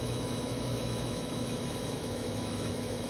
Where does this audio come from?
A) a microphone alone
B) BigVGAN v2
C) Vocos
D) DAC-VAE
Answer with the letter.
D